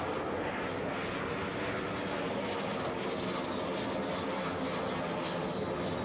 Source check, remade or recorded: recorded